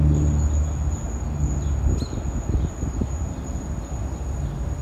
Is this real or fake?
real